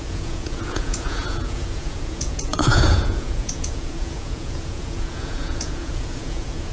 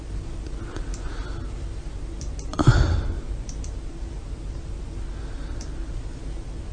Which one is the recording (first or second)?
second